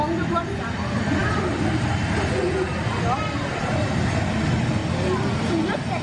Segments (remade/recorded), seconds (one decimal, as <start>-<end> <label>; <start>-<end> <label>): 0.0-6.0 recorded